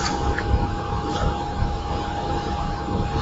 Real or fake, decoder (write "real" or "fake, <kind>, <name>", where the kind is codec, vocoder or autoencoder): fake, autoencoder, DAC-VAE